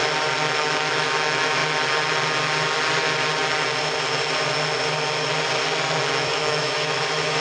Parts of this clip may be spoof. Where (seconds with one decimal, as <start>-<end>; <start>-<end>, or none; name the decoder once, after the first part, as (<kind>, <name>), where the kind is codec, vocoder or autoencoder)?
0.6-1.6 (autoencoder, DAC-VAE); 6.0-7.4